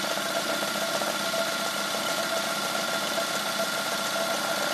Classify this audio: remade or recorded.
recorded